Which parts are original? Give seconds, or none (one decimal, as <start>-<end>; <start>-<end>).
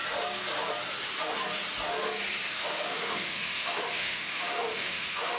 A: 0.0-2.5